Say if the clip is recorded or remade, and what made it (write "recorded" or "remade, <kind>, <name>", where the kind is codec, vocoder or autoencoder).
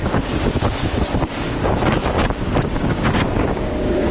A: remade, codec, DAC